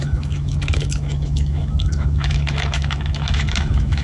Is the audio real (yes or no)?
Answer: no